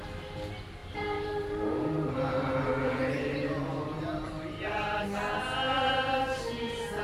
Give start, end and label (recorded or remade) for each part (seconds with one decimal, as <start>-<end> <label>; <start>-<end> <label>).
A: 0.0-0.8 recorded; 0.8-5.0 remade; 5.0-7.0 recorded